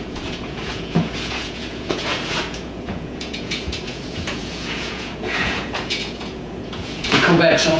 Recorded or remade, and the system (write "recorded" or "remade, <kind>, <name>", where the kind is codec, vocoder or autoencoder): remade, vocoder, Vocos